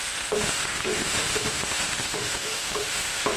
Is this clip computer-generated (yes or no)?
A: yes